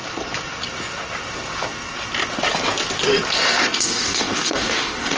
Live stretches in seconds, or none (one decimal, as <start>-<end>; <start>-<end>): 0.0-3.6